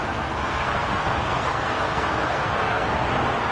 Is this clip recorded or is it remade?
remade